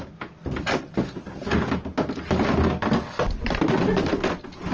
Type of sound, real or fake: real